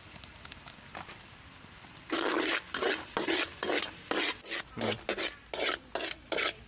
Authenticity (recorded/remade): recorded